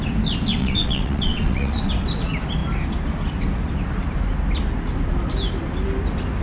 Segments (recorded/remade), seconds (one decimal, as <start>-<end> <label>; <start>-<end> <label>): 0.0-0.6 recorded; 0.6-1.9 remade; 1.9-6.4 recorded